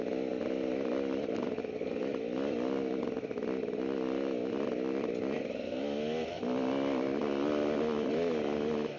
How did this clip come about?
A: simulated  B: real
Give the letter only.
B